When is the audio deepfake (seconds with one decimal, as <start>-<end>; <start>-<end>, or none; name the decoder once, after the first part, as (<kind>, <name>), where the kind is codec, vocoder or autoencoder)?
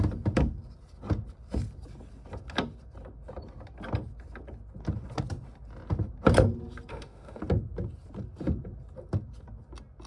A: 6.9-7.4 (autoencoder, DAC-VAE)